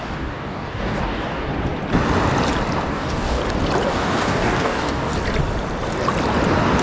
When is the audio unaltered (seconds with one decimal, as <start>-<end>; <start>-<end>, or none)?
1.5-2.9; 3.4-3.9; 5.1-6.8